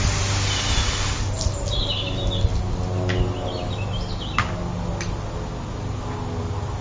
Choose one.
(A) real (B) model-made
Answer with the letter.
A